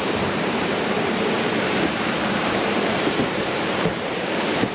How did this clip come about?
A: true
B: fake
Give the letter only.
B